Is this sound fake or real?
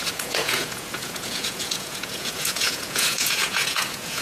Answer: fake